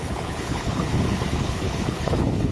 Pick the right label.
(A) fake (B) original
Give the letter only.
A